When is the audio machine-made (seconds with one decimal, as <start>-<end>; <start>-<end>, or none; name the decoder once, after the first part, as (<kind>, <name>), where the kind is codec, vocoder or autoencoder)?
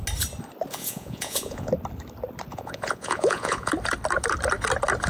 0.7-1.7 (vocoder, Vocos); 2.5-3.7